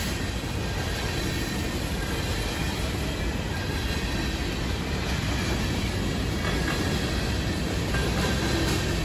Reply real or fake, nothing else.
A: real